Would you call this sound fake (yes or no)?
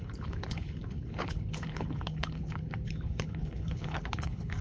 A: yes